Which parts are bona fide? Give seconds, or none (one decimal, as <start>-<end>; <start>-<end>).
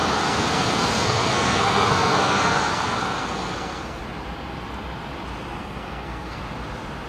4.0-5.6; 6.4-7.1